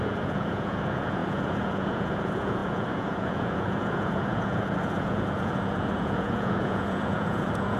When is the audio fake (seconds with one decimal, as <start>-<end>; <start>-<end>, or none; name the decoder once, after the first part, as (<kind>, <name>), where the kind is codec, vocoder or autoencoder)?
0.0-7.8 (vocoder, Vocos)